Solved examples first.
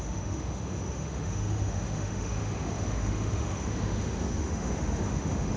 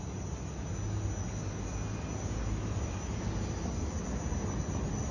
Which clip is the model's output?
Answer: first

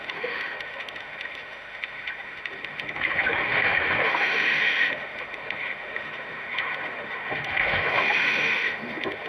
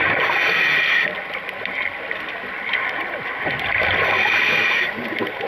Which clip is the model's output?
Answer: first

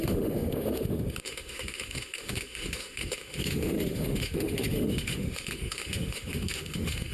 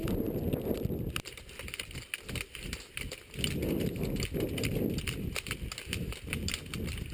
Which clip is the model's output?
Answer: first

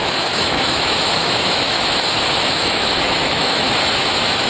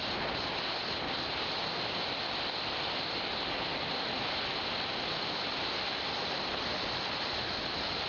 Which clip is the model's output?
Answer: first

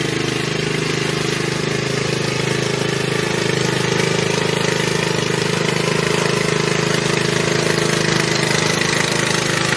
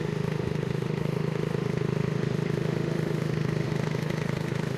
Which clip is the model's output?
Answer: second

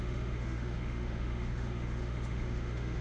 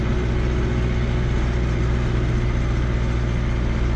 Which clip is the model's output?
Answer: first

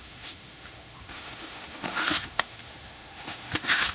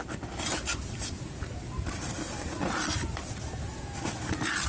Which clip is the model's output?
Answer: first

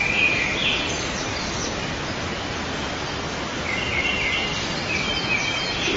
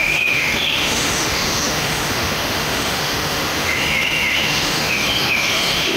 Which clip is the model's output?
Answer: second